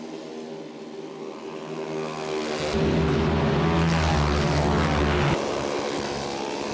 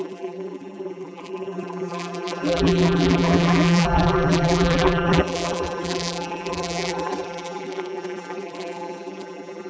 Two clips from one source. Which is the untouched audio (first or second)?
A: first